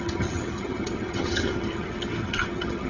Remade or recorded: remade